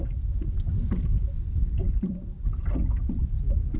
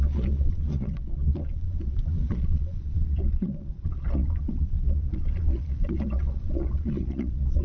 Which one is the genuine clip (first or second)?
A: first